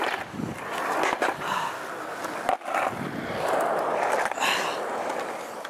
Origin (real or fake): real